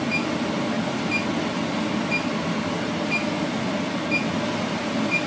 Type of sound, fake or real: real